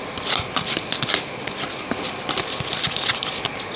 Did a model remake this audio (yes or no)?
no